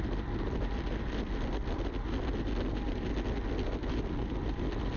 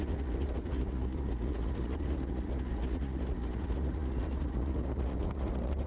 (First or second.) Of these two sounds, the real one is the first